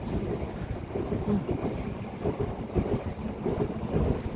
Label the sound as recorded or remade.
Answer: recorded